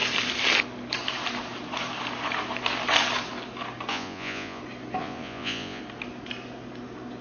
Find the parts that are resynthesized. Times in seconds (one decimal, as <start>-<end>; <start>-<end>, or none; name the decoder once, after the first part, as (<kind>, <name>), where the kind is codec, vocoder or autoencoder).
3.9-4.6 (vocoder, Vocos); 5.0-5.8